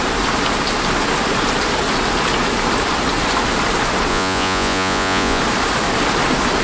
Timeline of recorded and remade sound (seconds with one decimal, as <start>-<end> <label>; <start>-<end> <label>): 0.0-4.1 recorded; 4.1-5.4 remade; 5.4-6.6 recorded